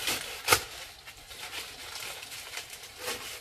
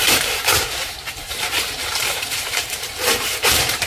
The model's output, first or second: second